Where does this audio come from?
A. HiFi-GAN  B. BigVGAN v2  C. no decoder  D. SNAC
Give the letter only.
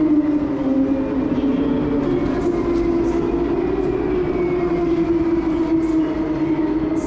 C